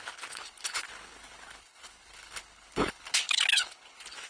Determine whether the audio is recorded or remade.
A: remade